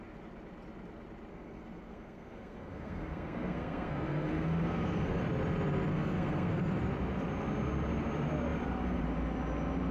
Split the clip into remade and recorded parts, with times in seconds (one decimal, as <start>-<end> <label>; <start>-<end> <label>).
0.0-1.3 recorded; 1.3-5.2 remade; 5.2-5.9 recorded; 5.9-6.7 remade; 6.7-9.9 recorded